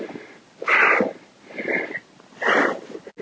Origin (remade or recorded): recorded